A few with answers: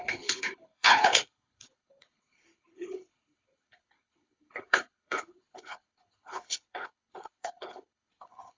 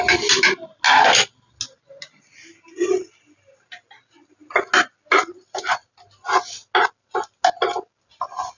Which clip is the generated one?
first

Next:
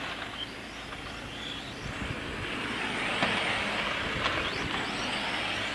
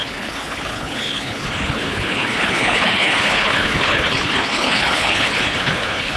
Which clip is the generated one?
second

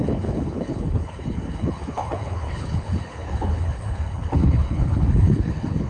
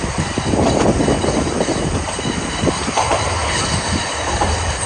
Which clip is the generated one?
first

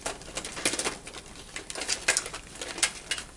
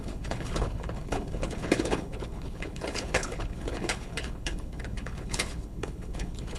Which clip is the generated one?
second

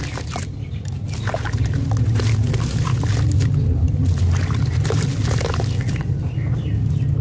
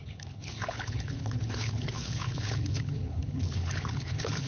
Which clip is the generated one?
second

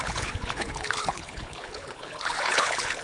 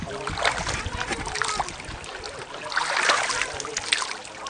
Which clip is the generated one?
first